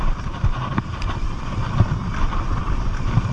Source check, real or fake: fake